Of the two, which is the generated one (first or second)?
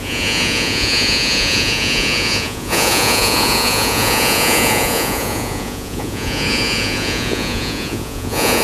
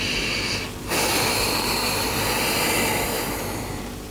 first